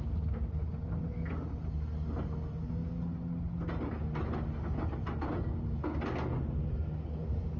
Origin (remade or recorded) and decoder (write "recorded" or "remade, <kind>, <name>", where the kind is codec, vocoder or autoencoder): recorded